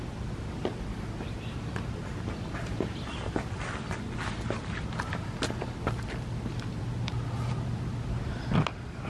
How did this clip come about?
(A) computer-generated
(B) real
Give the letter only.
B